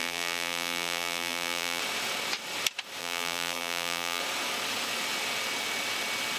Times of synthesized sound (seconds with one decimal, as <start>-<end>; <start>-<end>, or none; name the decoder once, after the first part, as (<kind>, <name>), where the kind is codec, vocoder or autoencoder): 0.0-1.8 (vocoder, BigVGAN v2); 3.0-4.2